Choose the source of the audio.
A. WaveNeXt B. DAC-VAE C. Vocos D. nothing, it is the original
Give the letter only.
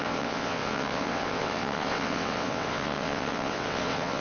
A